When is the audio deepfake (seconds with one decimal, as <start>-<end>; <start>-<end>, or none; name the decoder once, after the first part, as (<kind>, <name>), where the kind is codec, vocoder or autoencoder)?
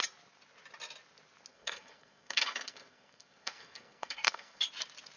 1.5-4.6 (codec, SNAC)